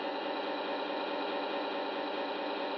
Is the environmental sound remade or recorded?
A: remade